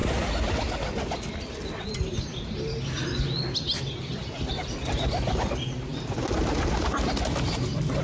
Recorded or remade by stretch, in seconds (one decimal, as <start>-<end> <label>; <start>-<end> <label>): 0.0-8.0 recorded